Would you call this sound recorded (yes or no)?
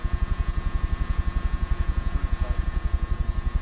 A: no